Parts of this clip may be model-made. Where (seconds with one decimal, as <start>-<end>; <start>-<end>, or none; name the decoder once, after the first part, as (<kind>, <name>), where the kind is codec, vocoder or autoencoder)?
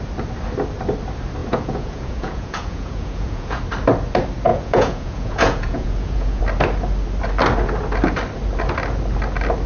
1.4-3.6 (vocoder, Vocos); 4.5-6.4